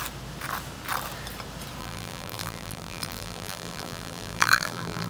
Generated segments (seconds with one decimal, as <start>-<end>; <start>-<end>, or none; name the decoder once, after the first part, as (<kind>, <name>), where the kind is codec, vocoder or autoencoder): 1.8-5.1 (vocoder, BigVGAN v2)